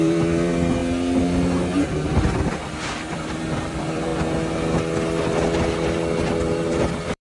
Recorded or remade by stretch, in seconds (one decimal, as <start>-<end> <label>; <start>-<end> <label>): 0.0-0.8 remade; 0.8-2.6 recorded; 2.6-4.1 remade; 4.1-6.4 recorded; 6.4-7.2 remade